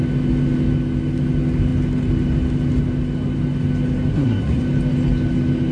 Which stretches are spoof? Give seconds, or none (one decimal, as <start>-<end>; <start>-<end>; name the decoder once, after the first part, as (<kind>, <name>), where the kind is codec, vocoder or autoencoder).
4.1-4.6 (codec, SNAC)